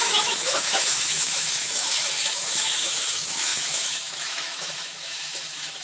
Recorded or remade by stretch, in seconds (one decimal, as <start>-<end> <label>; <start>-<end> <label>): 0.0-5.8 remade